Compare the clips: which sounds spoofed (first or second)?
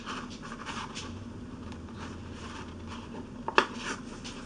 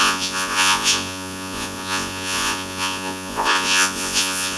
second